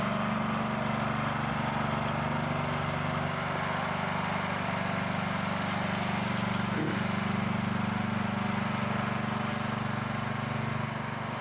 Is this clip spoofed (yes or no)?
no